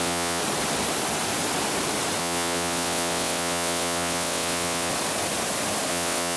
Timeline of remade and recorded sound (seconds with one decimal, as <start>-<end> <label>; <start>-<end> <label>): 0.0-0.4 remade; 0.4-2.2 recorded; 2.2-4.9 remade; 4.9-5.9 recorded; 5.9-6.4 remade